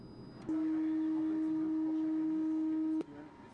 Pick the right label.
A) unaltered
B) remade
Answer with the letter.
A